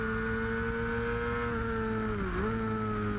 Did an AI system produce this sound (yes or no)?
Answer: no